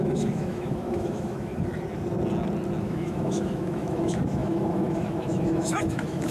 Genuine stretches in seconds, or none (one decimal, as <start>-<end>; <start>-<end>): 1.5-2.8